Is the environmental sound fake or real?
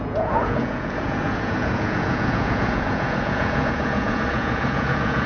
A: fake